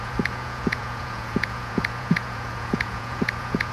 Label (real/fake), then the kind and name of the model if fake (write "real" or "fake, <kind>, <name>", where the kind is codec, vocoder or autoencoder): fake, vocoder, Vocos